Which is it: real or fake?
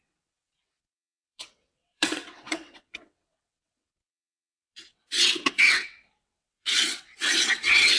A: fake